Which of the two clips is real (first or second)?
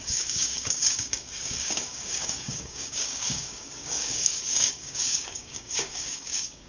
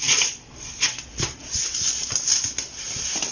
second